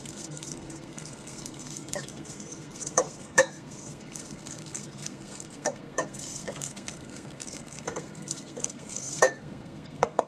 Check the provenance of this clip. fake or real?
fake